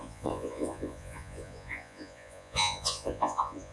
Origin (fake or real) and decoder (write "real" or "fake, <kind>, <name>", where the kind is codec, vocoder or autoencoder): fake, vocoder, Vocos